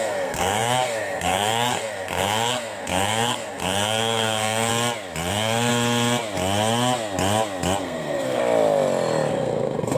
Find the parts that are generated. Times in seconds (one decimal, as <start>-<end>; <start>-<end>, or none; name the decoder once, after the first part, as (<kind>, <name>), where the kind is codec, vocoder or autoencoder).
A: 0.0-4.7 (codec, SNAC); 5.3-5.7; 7.8-8.4; 9.3-10.0